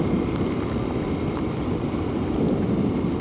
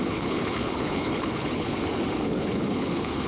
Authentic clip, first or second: first